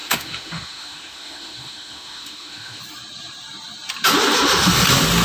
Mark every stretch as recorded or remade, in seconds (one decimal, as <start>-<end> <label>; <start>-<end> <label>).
0.0-2.8 remade; 2.8-5.2 recorded